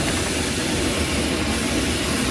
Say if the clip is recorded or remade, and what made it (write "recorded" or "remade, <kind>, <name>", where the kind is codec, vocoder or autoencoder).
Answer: recorded